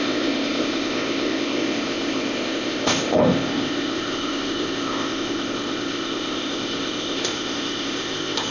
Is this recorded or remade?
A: remade